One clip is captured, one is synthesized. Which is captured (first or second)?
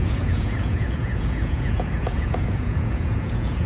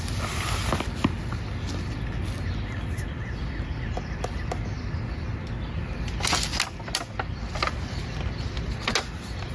second